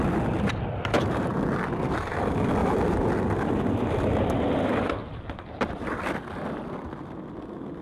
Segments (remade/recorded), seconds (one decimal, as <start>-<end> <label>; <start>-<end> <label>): 0.0-1.3 recorded; 1.3-2.2 remade; 2.2-2.6 recorded; 2.6-3.5 remade; 3.5-5.0 recorded; 5.0-6.4 remade; 6.4-7.8 recorded